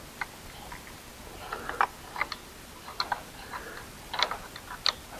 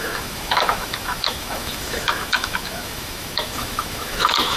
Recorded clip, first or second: first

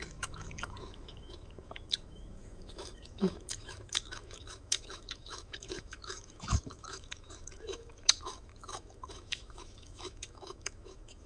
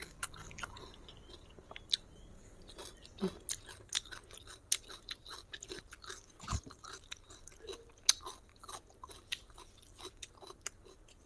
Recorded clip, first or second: second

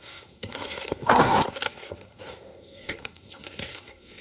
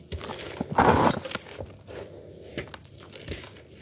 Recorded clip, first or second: second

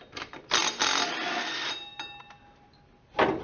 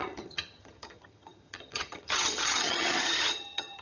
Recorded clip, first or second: first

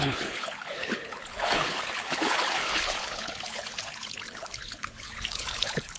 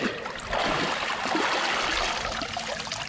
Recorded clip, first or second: second